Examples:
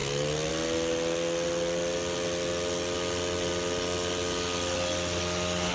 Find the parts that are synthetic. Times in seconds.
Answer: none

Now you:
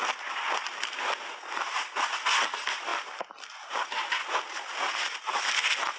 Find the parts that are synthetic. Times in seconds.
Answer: none